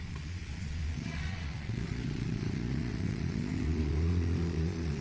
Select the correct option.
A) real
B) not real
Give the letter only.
B